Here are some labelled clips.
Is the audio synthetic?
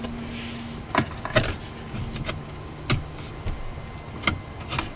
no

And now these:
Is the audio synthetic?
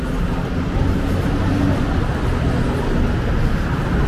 no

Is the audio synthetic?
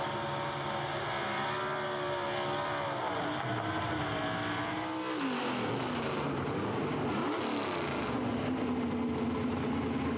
no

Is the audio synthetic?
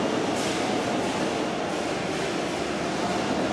no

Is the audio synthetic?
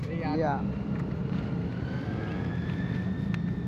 no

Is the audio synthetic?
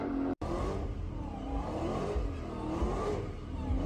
yes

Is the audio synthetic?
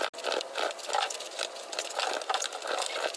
no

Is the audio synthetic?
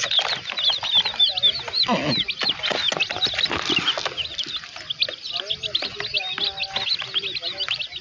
no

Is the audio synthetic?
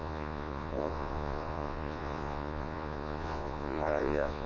yes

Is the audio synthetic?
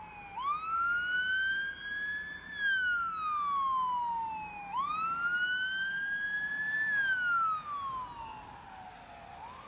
no